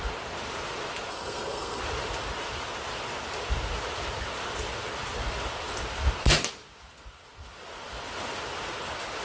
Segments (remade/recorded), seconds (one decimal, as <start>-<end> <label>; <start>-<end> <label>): 0.0-1.1 recorded; 1.1-1.8 remade; 1.8-9.2 recorded

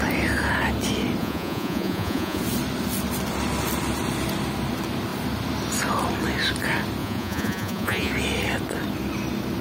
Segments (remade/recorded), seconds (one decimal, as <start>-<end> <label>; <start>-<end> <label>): 0.0-1.2 recorded; 1.2-2.4 remade; 2.4-7.0 recorded; 7.0-8.1 remade; 8.1-9.6 recorded

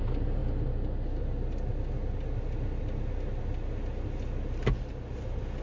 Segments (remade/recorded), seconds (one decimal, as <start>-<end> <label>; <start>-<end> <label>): 0.0-5.6 recorded

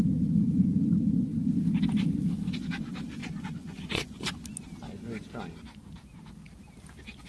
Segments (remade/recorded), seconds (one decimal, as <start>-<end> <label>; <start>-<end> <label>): 0.0-3.2 recorded; 3.2-4.4 remade; 4.4-7.3 recorded